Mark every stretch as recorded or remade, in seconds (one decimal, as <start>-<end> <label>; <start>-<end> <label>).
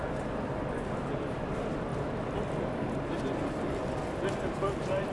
0.0-5.1 recorded